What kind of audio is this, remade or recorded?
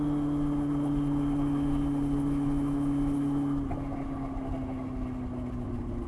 recorded